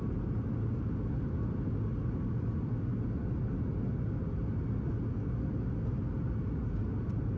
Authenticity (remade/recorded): recorded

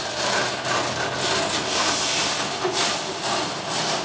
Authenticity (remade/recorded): recorded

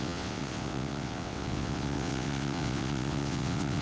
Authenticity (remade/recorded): remade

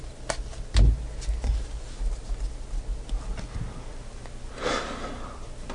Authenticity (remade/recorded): recorded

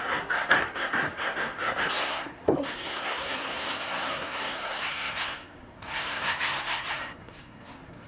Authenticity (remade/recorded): remade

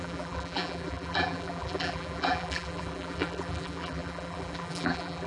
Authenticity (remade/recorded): remade